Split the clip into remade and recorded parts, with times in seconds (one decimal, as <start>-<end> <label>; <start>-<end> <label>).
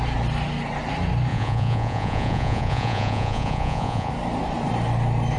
0.0-1.3 recorded; 1.3-4.1 remade; 4.1-5.4 recorded